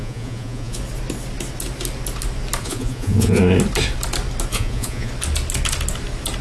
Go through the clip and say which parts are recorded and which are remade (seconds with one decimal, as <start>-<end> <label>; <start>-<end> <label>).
0.0-0.8 remade; 0.8-2.6 recorded; 2.6-3.4 remade; 3.4-4.5 recorded; 4.5-5.1 remade; 5.1-6.4 recorded